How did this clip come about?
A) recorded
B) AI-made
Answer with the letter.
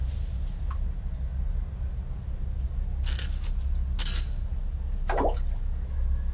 A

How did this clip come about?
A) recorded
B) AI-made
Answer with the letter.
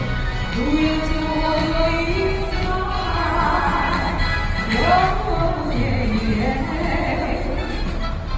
A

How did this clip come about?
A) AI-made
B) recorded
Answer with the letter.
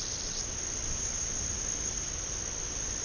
B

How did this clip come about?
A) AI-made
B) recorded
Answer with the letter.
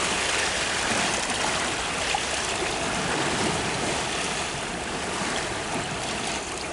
B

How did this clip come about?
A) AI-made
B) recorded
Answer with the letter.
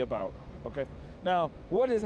A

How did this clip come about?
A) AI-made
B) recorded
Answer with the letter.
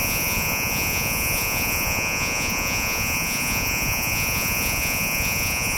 A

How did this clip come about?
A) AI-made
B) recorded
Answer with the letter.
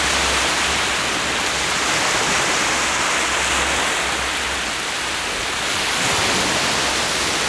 B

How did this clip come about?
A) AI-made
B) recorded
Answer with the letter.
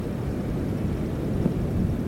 B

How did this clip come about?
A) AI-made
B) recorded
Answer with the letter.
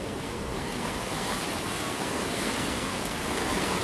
A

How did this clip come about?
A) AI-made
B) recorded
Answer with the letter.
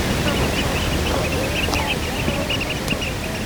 B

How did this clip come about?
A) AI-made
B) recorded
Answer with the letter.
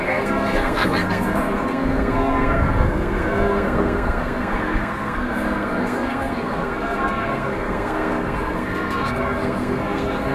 A